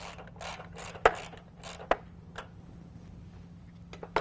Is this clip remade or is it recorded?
recorded